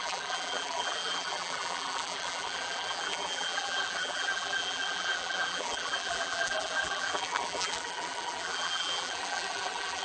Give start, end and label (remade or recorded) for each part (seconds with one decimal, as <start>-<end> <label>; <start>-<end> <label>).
0.0-10.0 remade

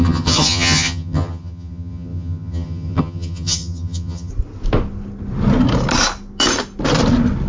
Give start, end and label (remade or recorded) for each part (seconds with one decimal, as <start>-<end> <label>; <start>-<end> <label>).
0.0-4.3 remade; 4.3-7.5 recorded

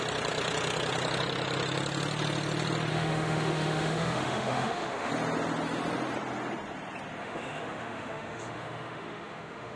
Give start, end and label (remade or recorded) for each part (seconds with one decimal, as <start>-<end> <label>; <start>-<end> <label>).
0.0-2.9 recorded; 2.9-5.1 remade; 5.1-7.2 recorded; 7.2-9.8 remade